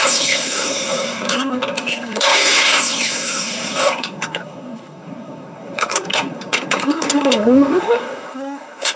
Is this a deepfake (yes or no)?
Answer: yes